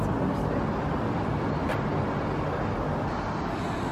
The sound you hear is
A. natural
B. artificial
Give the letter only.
A